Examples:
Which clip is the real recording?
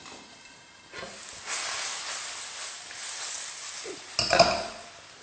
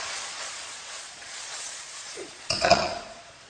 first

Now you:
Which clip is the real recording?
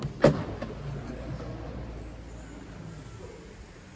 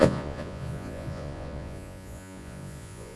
first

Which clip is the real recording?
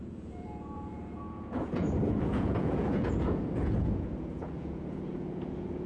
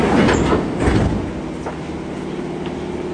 second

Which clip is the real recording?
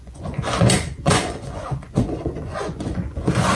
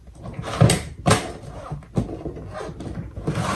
second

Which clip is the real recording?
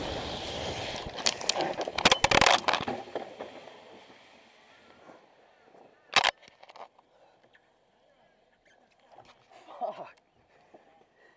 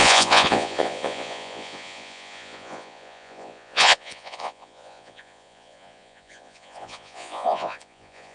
first